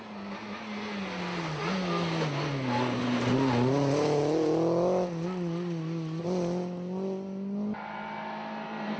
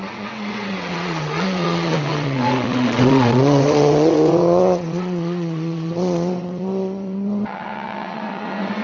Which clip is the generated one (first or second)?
second